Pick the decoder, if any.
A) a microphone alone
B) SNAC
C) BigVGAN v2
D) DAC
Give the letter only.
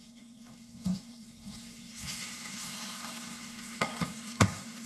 B